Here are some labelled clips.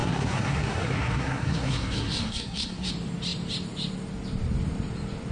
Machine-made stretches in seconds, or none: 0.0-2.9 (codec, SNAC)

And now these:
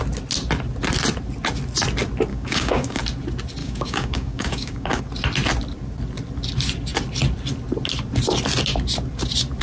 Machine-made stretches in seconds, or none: 2.3-3.0 (codec, DAC); 3.6-5.0